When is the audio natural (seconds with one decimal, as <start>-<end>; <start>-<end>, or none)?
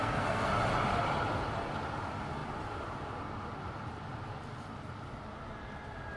0.5-6.2